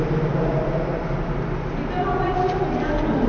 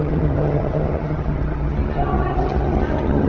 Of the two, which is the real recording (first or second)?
first